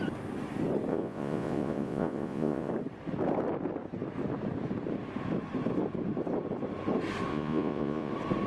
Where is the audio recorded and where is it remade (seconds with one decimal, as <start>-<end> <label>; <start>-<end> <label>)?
0.0-0.9 recorded; 0.9-2.7 remade; 2.7-7.3 recorded; 7.3-8.1 remade; 8.1-8.5 recorded

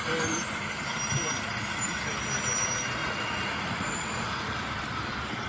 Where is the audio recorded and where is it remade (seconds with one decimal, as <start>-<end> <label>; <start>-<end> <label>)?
0.0-3.0 recorded; 3.0-4.3 remade; 4.3-5.5 recorded

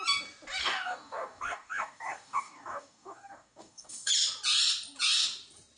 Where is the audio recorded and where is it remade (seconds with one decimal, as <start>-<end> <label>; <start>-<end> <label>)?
0.0-0.6 recorded; 0.6-4.1 remade; 4.1-5.8 recorded

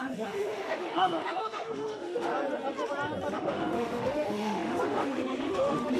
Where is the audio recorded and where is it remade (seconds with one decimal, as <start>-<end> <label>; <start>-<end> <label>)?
0.0-2.3 remade; 2.3-3.3 recorded; 3.3-6.0 remade

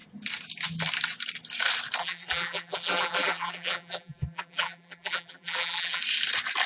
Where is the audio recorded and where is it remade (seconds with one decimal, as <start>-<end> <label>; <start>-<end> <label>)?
0.0-2.0 recorded; 2.0-6.0 remade; 6.0-6.7 recorded

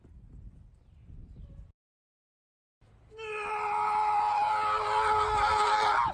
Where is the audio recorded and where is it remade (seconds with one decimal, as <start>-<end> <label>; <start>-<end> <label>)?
0.0-6.1 recorded

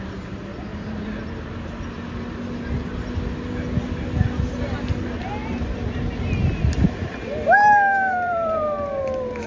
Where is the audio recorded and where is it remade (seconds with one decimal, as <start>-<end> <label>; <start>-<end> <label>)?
0.0-0.7 recorded; 0.7-1.3 remade; 1.3-5.4 recorded; 5.4-9.0 remade; 9.0-9.5 recorded